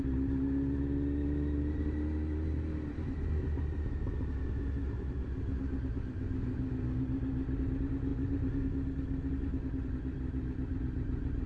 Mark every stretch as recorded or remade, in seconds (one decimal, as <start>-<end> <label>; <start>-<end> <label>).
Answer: 0.0-11.5 recorded